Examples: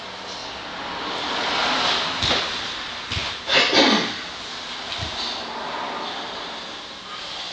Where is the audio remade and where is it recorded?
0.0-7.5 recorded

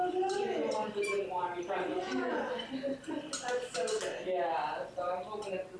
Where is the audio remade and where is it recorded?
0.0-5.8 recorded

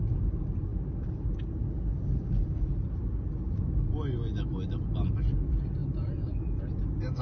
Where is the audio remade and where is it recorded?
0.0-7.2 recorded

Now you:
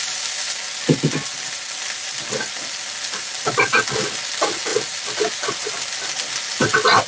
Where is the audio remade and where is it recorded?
0.0-7.1 recorded

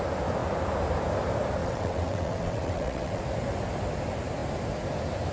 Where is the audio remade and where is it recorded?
0.0-1.6 recorded; 1.6-3.2 remade; 3.2-5.3 recorded

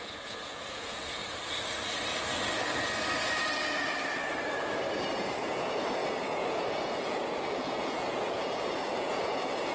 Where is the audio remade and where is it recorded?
0.0-1.2 remade; 1.2-5.1 recorded; 5.1-9.7 remade

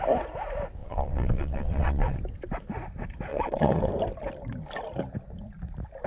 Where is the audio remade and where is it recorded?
0.0-0.8 recorded; 0.8-2.2 remade; 2.2-3.3 recorded; 3.3-3.9 remade; 3.9-6.1 recorded